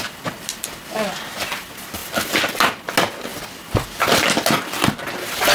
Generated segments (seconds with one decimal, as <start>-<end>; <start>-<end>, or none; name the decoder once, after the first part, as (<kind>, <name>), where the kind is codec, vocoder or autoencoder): 3.3-4.0 (vocoder, BigVGAN v2)